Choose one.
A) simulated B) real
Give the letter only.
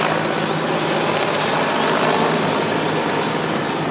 B